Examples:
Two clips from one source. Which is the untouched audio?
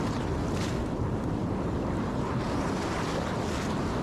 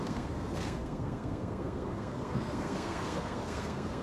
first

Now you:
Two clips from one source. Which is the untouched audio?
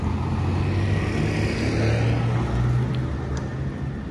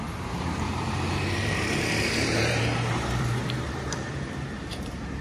first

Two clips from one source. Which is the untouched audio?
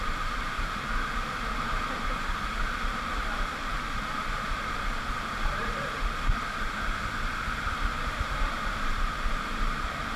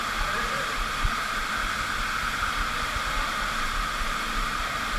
second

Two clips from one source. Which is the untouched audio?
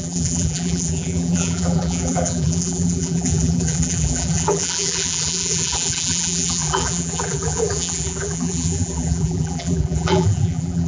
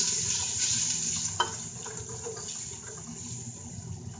second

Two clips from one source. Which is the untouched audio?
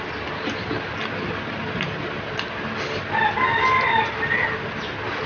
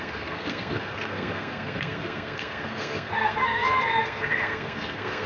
first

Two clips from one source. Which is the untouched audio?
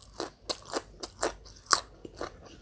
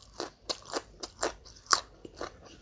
first